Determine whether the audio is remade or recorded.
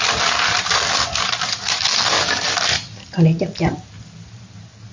recorded